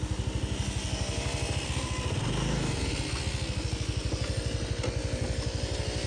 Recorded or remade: recorded